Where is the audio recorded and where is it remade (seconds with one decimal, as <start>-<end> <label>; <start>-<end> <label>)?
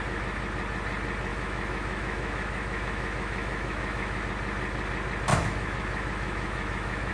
0.0-1.3 recorded; 1.3-4.2 remade; 4.2-5.3 recorded; 5.3-7.1 remade